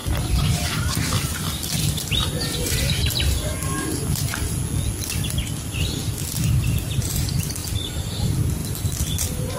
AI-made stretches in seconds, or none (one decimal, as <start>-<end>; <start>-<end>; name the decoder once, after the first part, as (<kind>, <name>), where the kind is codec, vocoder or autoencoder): 0.0-4.6 (vocoder, BigVGAN v2); 7.6-8.2; 8.6-9.6